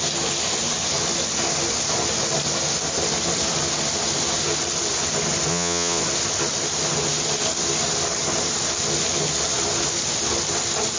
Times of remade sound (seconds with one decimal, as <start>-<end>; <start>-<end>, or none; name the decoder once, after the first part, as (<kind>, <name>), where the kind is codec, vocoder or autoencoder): 5.5-6.0 (vocoder, Vocos)